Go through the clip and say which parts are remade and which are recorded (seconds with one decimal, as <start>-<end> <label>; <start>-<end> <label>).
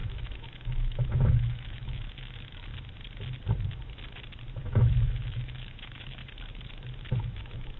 0.0-2.7 remade; 2.7-4.6 recorded; 4.6-6.2 remade; 6.2-7.2 recorded; 7.2-7.8 remade